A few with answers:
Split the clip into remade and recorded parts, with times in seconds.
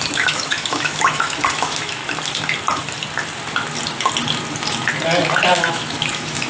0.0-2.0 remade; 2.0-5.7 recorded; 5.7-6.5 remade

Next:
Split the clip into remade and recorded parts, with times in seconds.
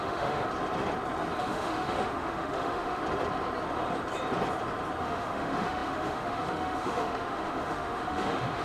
0.0-0.4 remade; 0.4-1.4 recorded; 1.4-3.0 remade; 3.0-5.0 recorded; 5.0-8.6 remade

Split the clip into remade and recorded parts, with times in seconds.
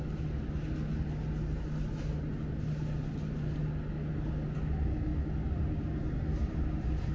0.0-7.1 recorded